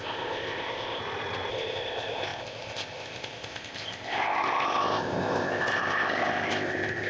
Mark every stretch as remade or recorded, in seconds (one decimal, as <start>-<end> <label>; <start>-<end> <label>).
0.0-1.0 remade; 1.0-1.5 recorded; 1.5-7.1 remade